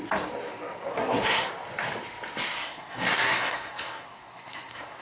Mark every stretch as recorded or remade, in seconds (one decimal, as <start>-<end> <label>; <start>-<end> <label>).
0.0-0.9 recorded; 0.9-1.5 remade; 1.5-2.6 recorded; 2.6-5.0 remade